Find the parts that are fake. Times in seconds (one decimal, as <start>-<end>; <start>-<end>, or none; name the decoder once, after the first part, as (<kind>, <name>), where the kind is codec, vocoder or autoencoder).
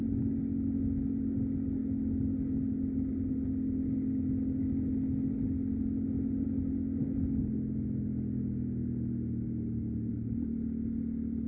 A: none